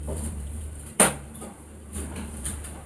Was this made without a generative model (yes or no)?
no